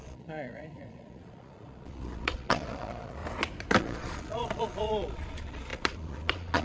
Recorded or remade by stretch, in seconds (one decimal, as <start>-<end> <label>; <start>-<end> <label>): 0.0-3.2 remade; 3.2-3.8 recorded; 3.8-6.6 remade